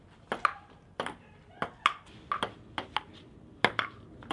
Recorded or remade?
recorded